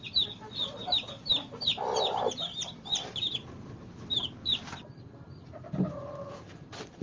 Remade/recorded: recorded